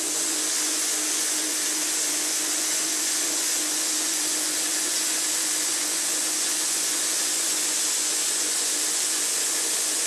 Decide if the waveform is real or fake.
fake